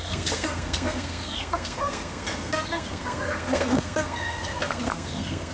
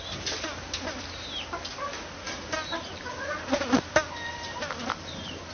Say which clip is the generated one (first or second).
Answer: first